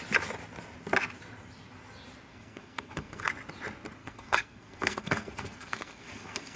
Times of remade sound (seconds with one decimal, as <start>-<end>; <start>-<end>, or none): 2.3-3.3; 4.0-6.6

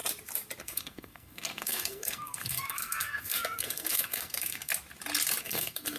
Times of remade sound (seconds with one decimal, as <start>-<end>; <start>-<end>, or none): 0.6-4.7; 5.4-6.0